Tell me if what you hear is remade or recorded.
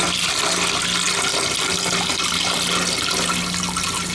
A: recorded